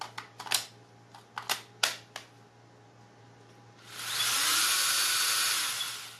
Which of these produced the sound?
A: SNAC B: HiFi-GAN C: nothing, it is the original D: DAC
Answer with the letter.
C